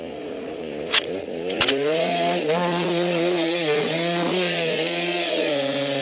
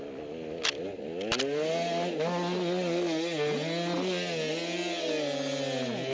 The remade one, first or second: first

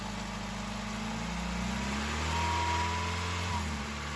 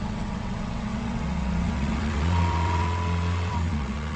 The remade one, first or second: second